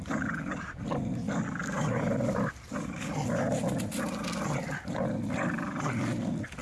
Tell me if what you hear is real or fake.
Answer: real